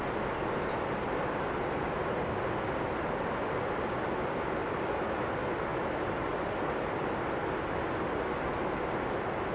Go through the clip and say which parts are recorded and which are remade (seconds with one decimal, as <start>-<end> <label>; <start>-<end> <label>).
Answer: 0.0-9.5 recorded